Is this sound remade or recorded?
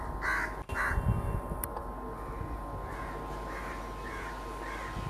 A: recorded